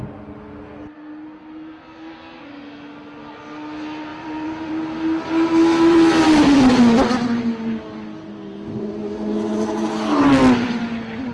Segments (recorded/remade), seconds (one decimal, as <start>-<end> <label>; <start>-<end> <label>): 0.0-4.1 recorded; 4.1-4.7 remade; 4.7-11.3 recorded